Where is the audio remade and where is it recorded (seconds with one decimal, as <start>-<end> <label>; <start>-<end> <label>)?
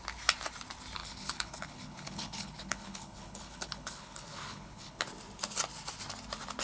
0.0-1.0 recorded; 1.0-5.0 remade; 5.0-6.6 recorded